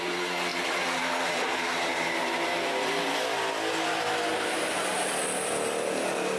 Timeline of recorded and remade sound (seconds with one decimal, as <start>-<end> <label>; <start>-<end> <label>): 0.0-0.5 recorded; 0.5-3.1 remade; 3.1-4.3 recorded; 4.3-4.8 remade; 4.8-6.4 recorded